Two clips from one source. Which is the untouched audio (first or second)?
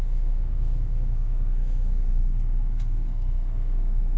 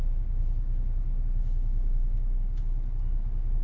second